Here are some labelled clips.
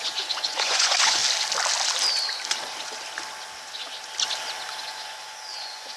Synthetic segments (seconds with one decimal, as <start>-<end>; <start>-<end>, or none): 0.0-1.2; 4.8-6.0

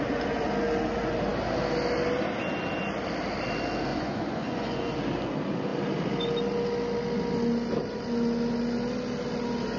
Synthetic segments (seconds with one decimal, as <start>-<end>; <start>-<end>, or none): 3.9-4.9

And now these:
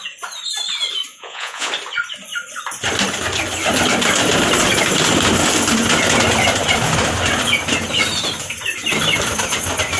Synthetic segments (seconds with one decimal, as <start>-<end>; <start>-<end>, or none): 1.1-1.7

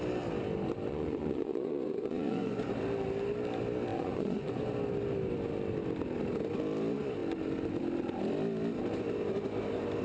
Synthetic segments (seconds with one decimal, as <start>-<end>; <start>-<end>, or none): 0.9-2.7; 3.9-4.7

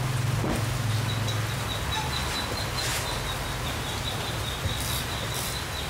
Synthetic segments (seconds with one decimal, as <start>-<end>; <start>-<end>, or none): none

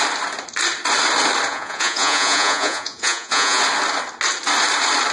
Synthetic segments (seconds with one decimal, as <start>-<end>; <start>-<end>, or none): 1.5-3.6